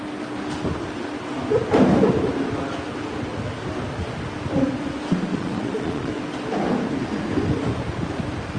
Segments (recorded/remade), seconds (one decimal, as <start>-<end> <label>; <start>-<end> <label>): 0.0-5.3 recorded; 5.3-6.1 remade; 6.1-8.6 recorded